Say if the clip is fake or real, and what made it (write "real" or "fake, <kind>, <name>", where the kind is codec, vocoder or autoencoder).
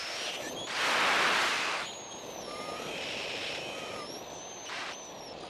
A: real